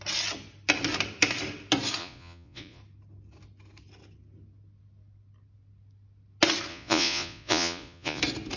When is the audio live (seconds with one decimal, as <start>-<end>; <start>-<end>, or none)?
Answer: 0.0-2.0; 2.8-6.7; 8.2-8.6